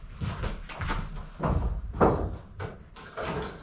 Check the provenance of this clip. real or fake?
real